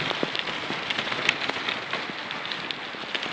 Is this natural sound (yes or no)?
yes